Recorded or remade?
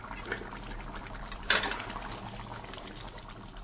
recorded